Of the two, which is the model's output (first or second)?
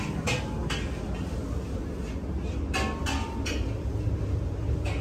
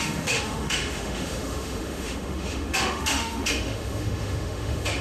second